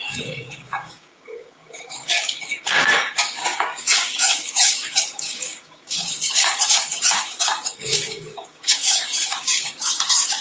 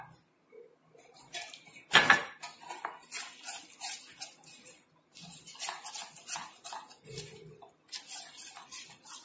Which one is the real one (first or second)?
second